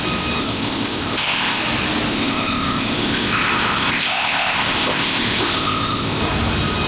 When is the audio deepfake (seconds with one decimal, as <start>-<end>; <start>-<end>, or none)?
0.4-1.6; 2.1-6.2